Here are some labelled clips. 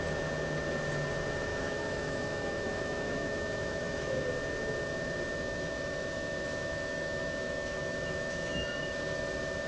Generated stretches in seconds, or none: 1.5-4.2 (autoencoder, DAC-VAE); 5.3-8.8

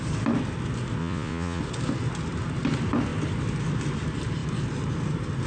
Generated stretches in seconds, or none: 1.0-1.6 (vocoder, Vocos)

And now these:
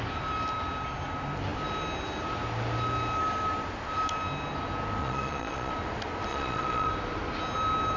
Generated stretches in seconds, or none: 5.0-5.7 (vocoder, Vocos); 6.3-6.9

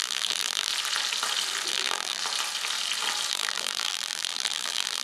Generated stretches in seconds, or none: 0.0-0.7 (vocoder, BigVGAN v2); 1.7-2.2; 3.3-5.0

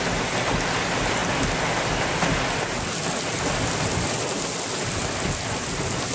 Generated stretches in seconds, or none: none

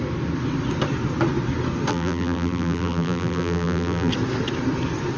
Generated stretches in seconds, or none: 1.9-4.1 (vocoder, BigVGAN v2)

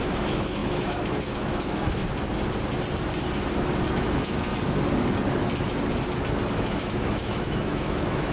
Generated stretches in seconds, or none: 0.0-2.0 (autoencoder, DAC-VAE); 3.9-4.5; 6.5-8.3

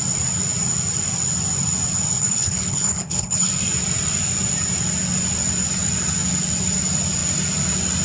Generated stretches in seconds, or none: 2.2-3.5 (codec, HILCodec)